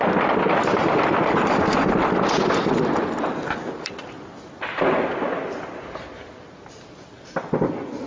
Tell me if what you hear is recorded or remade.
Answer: recorded